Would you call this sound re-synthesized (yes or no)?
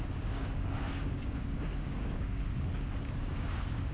yes